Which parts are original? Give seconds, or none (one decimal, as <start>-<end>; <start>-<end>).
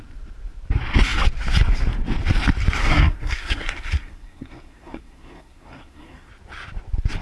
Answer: 0.0-2.8; 6.3-7.2